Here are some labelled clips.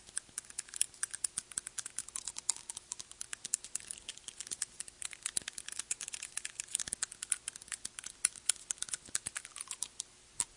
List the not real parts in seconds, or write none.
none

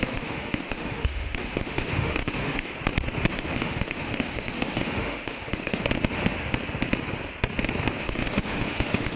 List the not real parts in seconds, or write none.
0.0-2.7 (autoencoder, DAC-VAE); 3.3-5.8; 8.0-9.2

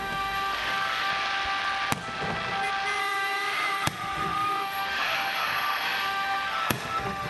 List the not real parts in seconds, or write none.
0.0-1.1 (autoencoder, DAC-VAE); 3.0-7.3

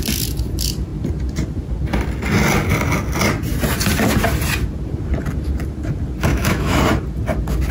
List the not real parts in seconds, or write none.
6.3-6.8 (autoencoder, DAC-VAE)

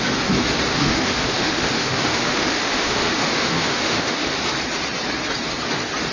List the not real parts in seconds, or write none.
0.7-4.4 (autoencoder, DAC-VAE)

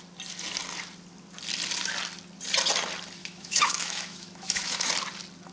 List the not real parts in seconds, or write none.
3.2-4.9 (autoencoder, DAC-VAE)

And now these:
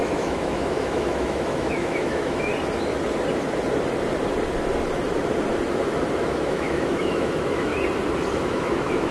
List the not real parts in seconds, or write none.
0.0-2.5 (autoencoder, DAC-VAE); 6.4-7.7; 8.3-9.1